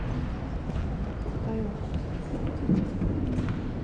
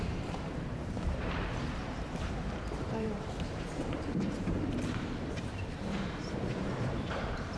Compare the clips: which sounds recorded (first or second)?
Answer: first